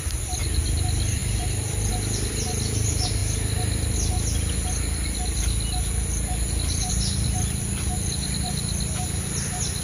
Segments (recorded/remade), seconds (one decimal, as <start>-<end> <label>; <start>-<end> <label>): 0.0-3.2 remade; 3.2-6.9 recorded; 6.9-9.8 remade